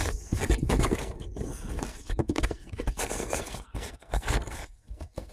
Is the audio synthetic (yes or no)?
yes